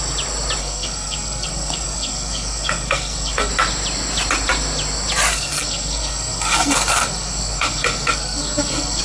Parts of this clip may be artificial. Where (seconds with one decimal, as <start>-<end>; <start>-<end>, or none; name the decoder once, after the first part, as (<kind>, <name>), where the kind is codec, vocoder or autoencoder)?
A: 0.6-3.5 (codec, SNAC); 5.3-9.0